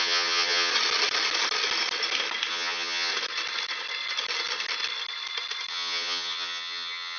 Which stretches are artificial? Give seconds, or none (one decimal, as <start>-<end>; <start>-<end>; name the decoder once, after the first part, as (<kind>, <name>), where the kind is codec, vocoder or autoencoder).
0.0-0.7 (vocoder, HiFi-GAN); 2.5-3.1; 5.7-7.2